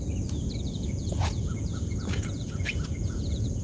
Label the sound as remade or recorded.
remade